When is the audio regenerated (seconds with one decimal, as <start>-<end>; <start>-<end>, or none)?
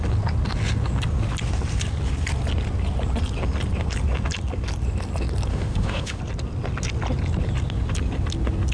5.5-6.2